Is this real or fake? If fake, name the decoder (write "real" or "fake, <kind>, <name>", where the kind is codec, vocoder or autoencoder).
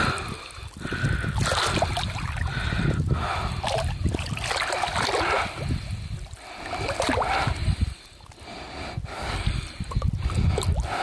real